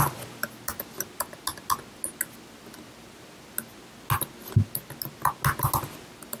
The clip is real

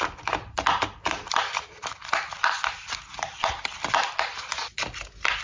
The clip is real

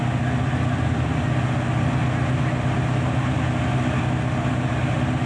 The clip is real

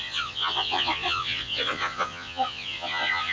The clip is fake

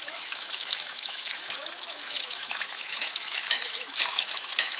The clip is fake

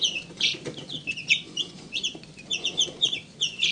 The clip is fake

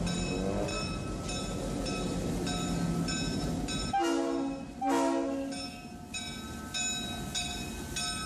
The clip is real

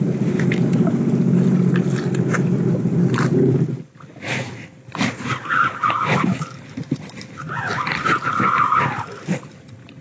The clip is real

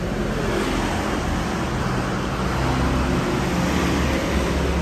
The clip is real